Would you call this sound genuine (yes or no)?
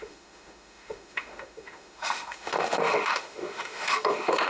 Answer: no